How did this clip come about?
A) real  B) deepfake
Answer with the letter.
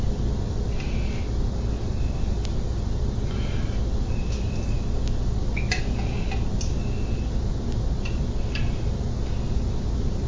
A